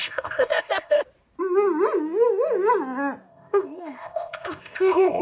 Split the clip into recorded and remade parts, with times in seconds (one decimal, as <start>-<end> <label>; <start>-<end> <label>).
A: 0.0-1.0 remade; 1.0-3.3 recorded; 3.3-5.2 remade